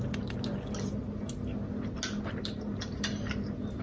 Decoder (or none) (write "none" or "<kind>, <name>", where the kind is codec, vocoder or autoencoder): none